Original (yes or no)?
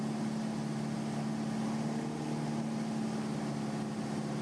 yes